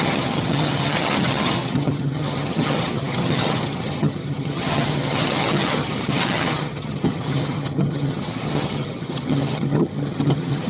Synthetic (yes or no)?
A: yes